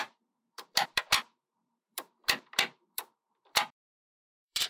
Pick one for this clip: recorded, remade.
remade